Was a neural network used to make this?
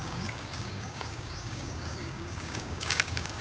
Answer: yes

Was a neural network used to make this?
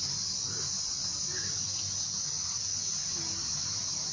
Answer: no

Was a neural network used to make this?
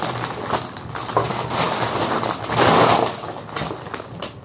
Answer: no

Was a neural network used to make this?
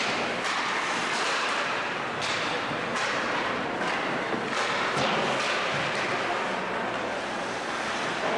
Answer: no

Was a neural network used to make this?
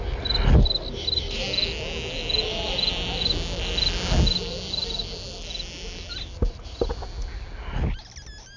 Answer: no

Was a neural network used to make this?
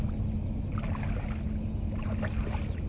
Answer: no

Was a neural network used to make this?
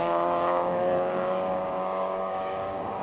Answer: yes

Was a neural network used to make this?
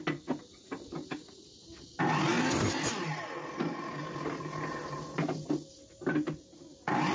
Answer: no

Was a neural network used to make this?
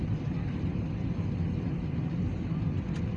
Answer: no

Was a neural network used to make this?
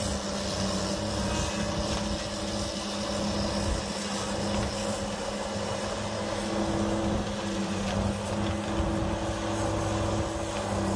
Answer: no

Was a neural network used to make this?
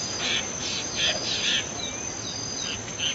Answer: no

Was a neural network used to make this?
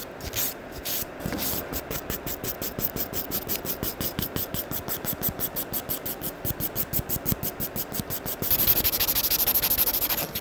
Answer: no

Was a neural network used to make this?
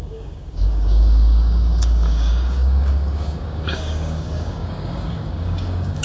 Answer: yes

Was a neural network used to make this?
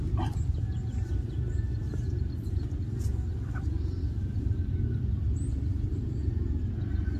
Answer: no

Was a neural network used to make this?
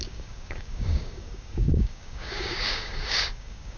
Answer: yes